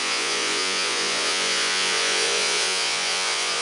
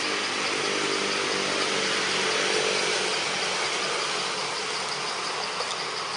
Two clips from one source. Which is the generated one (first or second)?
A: first